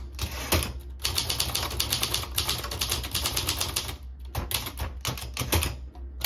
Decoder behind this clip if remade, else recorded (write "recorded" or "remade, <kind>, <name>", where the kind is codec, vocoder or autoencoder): recorded